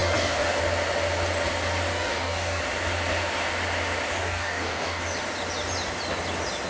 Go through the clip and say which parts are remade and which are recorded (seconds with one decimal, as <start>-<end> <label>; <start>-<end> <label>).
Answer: 0.0-0.6 remade; 0.6-1.9 recorded; 1.9-2.6 remade; 2.6-4.2 recorded; 4.2-5.0 remade; 5.0-6.7 recorded